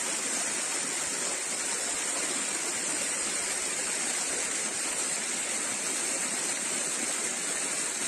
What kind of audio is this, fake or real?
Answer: real